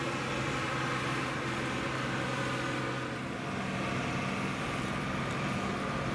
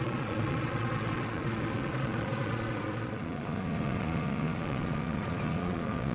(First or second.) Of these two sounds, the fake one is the second